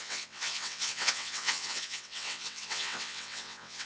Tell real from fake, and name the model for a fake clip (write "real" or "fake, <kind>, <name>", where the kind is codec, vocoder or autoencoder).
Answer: fake, vocoder, WaveNeXt